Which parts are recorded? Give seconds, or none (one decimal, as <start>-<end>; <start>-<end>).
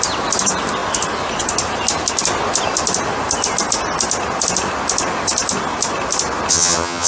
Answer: 0.0-6.5